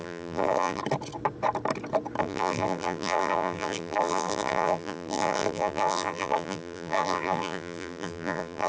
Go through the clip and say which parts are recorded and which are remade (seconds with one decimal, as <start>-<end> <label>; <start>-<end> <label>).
0.0-0.8 remade; 0.8-2.2 recorded; 2.2-8.7 remade